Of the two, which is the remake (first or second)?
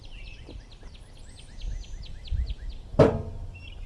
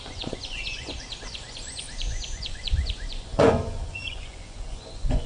second